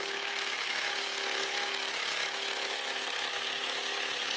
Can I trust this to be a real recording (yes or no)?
no